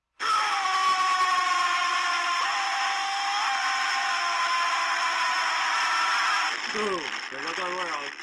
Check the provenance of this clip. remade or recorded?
recorded